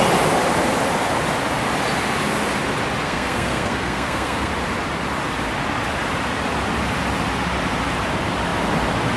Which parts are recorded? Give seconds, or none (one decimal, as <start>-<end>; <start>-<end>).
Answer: 0.0-3.0; 4.5-9.2